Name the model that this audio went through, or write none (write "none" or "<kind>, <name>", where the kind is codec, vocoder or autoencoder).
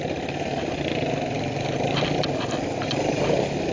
none